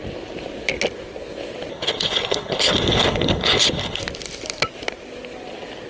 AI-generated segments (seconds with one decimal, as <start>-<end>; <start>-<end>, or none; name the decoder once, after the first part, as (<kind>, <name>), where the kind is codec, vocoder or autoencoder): 1.7-4.0 (codec, HILCodec)